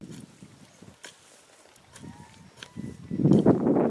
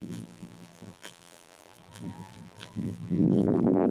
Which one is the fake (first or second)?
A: second